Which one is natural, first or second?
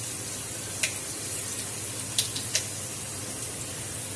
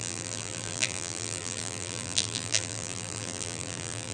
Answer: first